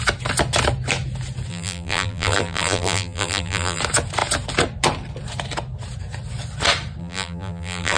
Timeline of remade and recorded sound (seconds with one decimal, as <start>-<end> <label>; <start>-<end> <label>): 0.0-1.5 recorded; 1.5-3.8 remade; 3.8-7.0 recorded; 7.0-8.0 remade

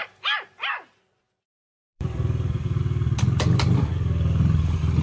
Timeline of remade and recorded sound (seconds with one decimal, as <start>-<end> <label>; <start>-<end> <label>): 0.0-1.5 recorded; 1.5-2.8 remade; 2.8-5.0 recorded

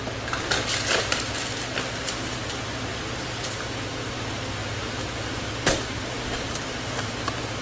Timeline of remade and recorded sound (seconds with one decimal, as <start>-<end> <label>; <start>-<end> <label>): 0.0-4.6 recorded; 4.6-7.1 remade; 7.1-7.6 recorded

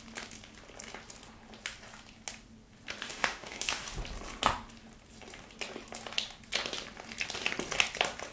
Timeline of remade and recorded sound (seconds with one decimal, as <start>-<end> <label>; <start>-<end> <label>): 0.0-3.1 recorded; 3.1-3.8 remade; 3.8-8.3 recorded

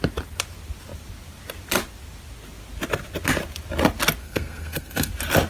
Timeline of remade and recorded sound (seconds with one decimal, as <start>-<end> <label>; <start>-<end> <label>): 0.0-4.2 recorded; 4.2-5.1 remade; 5.1-5.5 recorded

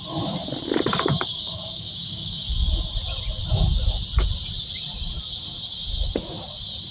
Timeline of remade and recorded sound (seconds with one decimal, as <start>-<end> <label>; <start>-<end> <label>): 0.0-0.9 recorded; 0.9-2.4 remade; 2.4-6.9 recorded

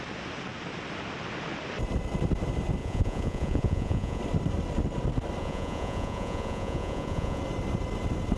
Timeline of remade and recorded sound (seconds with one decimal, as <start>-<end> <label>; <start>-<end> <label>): 0.0-2.8 recorded; 2.8-4.2 remade; 4.2-5.4 recorded; 5.4-7.4 remade; 7.4-8.4 recorded